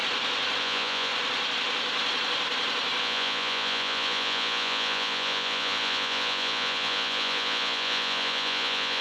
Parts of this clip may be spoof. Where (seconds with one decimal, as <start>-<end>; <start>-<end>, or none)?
0.6-1.1; 3.0-9.0